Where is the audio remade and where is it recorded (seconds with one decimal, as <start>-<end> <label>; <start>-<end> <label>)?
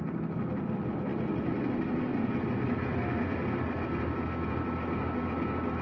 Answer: 0.0-5.8 recorded